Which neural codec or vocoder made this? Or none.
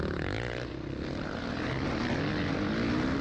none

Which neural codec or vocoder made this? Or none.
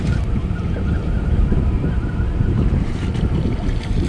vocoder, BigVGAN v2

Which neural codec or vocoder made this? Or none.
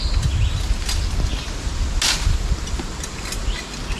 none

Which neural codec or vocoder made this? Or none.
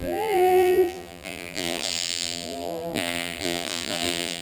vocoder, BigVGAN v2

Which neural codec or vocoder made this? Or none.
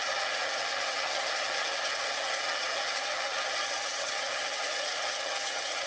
vocoder, HiFi-GAN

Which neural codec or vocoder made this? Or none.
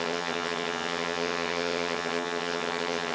vocoder, HiFi-GAN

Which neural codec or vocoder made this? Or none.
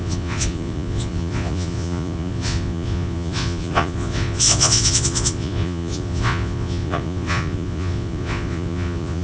vocoder, Vocos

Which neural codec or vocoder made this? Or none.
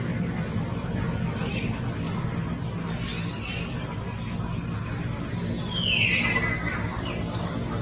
none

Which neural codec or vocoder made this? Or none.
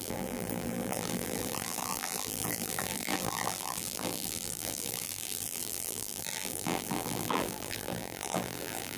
vocoder, BigVGAN v2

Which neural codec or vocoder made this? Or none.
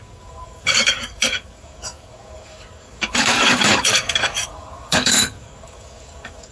codec, DAC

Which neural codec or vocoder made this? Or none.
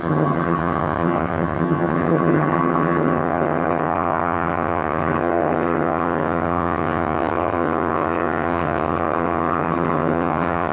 vocoder, HiFi-GAN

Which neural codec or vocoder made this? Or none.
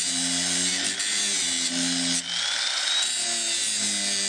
none